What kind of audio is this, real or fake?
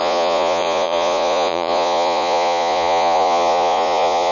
fake